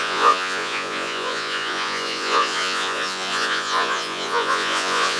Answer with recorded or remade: remade